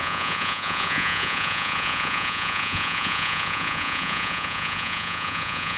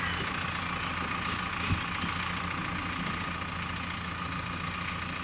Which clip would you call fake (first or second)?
first